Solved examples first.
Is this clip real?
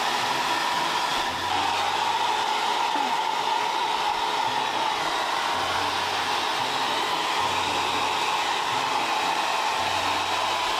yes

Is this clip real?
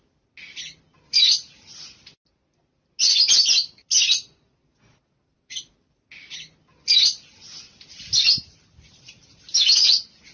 yes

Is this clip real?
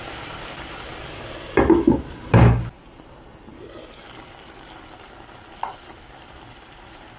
yes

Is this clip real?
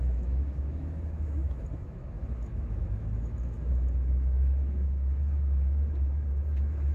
no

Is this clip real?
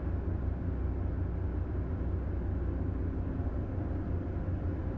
yes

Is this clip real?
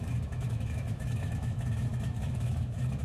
no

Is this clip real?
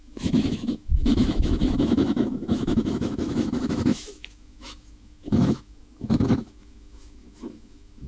no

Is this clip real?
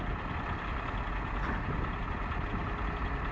yes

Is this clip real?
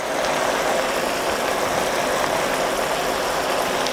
yes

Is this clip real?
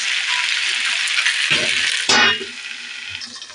yes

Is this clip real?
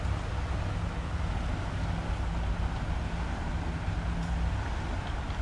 yes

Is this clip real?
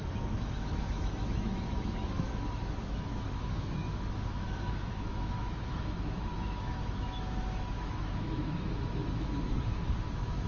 no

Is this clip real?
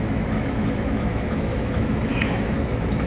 no